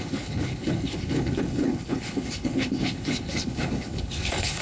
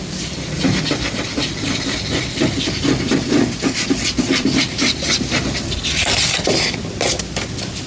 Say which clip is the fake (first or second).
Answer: first